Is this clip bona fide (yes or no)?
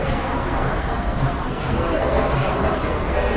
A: no